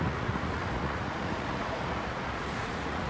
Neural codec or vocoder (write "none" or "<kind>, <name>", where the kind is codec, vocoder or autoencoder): vocoder, Vocos